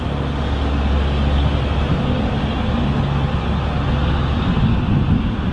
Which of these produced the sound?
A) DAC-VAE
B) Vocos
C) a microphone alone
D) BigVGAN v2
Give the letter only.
C